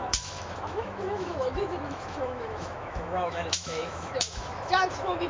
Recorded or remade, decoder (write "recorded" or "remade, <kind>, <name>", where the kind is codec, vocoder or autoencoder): remade, autoencoder, DAC-VAE